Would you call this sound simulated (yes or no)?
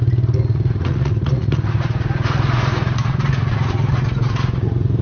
yes